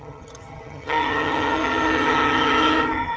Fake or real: fake